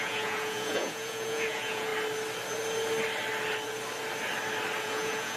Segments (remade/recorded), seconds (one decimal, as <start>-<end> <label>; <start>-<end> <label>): 0.0-1.9 remade; 1.9-4.8 recorded; 4.8-5.4 remade